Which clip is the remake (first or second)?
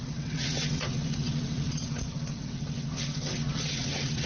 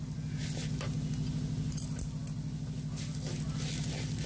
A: first